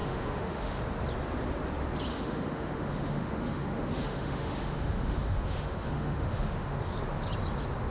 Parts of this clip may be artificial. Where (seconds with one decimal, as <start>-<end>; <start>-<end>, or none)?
0.0-0.8; 2.1-6.8